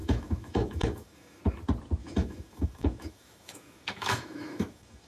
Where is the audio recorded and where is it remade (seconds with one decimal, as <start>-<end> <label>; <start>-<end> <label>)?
0.0-1.4 remade; 1.4-2.0 recorded; 2.0-5.1 remade